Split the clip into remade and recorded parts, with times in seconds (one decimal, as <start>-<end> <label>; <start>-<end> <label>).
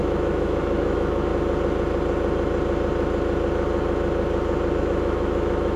0.0-1.3 remade; 1.3-4.8 recorded; 4.8-5.8 remade